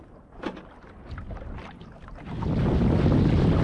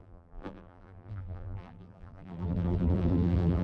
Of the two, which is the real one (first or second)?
first